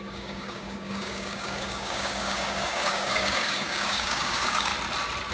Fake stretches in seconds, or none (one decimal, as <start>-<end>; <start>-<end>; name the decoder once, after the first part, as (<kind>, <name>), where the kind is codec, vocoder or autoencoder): 0.0-4.7 (codec, DAC)

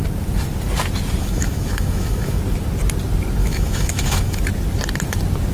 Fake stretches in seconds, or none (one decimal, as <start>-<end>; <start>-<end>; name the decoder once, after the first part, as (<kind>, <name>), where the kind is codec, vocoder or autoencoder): 1.2-2.4 (autoencoder, DAC-VAE); 3.4-4.4

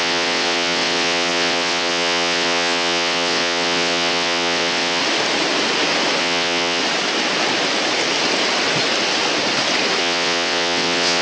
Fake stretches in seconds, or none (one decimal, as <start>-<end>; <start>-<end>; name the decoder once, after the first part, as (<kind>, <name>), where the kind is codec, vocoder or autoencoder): 0.0-5.0 (vocoder, WaveNeXt); 6.2-6.8; 10.0-11.2

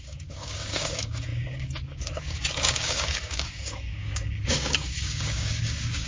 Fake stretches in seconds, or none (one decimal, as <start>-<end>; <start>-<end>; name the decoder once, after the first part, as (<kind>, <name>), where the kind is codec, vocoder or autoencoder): 0.0-6.1 (codec, DAC)

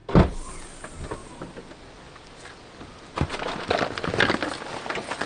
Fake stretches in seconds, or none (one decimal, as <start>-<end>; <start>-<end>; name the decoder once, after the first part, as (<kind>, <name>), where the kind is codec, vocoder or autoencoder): none